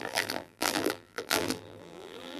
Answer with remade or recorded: remade